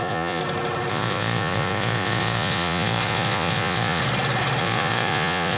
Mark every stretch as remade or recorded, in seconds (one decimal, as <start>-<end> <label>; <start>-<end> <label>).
0.0-0.4 remade; 0.4-0.9 recorded; 0.9-4.0 remade; 4.0-4.6 recorded; 4.6-5.6 remade

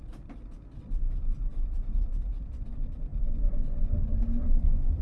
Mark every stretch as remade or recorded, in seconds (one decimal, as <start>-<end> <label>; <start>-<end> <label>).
0.0-1.5 recorded; 1.5-2.1 remade; 2.1-5.0 recorded

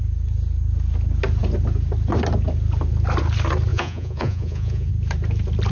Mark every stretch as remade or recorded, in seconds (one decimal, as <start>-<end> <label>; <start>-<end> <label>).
0.0-3.7 recorded; 3.7-4.9 remade; 4.9-5.7 recorded

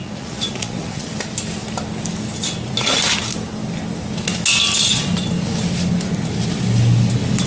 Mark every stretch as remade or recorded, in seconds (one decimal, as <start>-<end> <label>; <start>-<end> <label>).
0.0-1.1 remade; 1.1-7.5 recorded

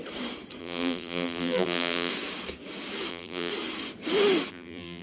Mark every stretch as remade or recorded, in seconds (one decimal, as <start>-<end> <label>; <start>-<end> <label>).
0.0-0.6 recorded; 0.6-2.1 remade; 2.1-3.1 recorded; 3.1-3.5 remade; 3.5-4.5 recorded; 4.5-5.0 remade

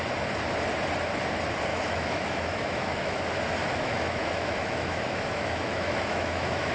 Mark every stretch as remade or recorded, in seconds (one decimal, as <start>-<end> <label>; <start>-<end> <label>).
0.0-1.7 recorded; 1.7-3.2 remade; 3.2-3.6 recorded; 3.6-6.7 remade